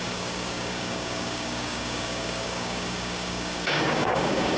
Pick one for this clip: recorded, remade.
remade